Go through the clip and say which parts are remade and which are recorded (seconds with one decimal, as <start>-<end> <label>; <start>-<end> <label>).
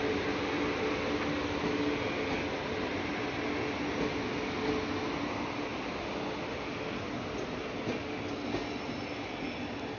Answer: 0.0-10.0 recorded